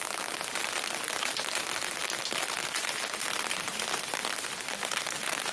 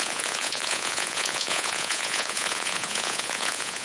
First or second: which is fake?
second